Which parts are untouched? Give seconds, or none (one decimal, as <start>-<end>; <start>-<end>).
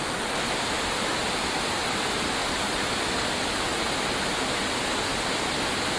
0.0-6.0